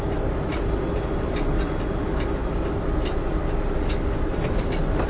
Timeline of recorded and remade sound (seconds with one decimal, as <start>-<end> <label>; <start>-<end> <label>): 0.0-2.4 recorded; 2.4-4.6 remade; 4.6-5.1 recorded